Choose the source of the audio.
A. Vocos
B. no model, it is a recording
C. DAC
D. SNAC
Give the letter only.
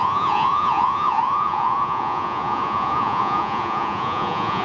A